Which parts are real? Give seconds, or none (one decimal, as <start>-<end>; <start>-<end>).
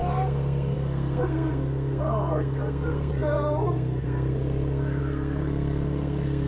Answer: none